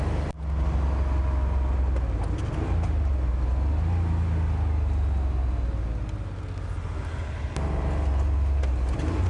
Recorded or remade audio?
recorded